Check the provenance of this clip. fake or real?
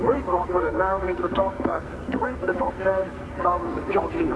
fake